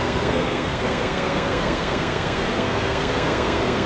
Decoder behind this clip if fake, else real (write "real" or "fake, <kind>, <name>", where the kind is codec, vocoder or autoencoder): fake, codec, SNAC